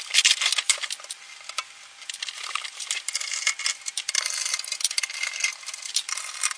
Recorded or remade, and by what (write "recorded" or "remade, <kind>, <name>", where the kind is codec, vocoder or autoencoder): recorded